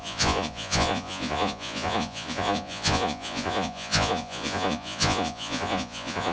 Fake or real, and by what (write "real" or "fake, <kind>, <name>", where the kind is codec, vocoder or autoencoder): fake, vocoder, Vocos